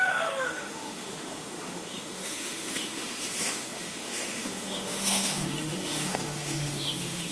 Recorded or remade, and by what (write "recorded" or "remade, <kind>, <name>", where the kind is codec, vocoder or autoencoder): remade, autoencoder, DAC-VAE